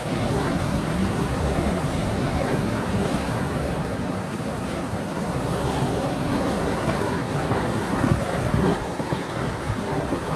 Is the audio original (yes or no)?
no